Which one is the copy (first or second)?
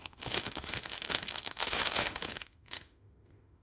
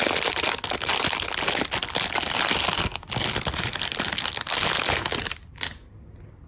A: first